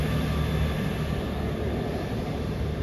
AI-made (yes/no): no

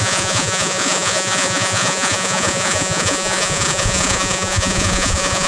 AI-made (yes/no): yes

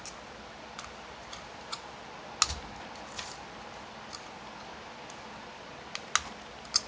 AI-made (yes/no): no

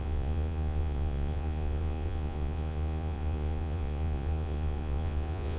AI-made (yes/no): yes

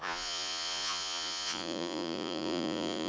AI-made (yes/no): yes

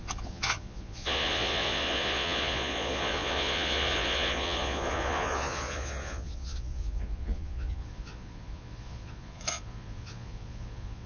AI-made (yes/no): yes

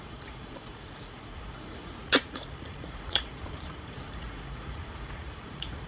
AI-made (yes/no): yes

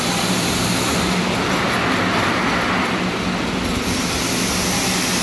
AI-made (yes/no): no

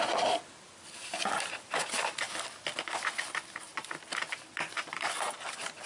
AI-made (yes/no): no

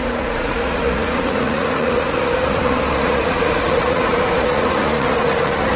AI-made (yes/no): yes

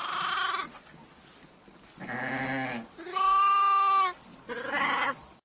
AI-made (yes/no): no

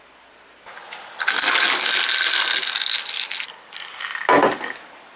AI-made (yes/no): no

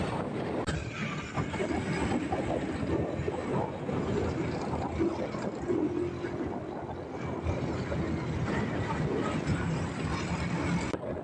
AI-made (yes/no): no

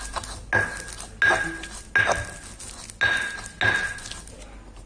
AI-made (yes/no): no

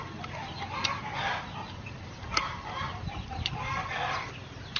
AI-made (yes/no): no